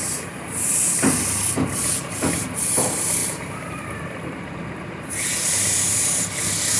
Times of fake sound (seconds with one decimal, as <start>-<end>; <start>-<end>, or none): 0.0-0.9; 3.2-5.3